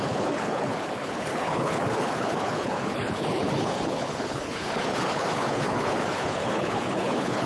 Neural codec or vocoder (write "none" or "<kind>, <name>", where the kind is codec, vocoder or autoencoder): codec, HILCodec